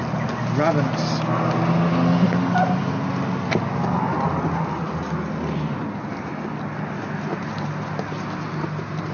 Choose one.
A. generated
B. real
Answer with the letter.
B